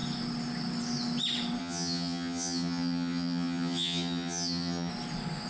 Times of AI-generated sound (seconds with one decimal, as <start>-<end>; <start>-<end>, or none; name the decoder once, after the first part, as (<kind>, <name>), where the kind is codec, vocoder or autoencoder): 1.6-4.9 (vocoder, HiFi-GAN)